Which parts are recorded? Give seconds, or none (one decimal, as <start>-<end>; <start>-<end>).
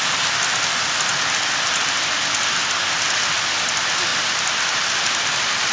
0.0-4.1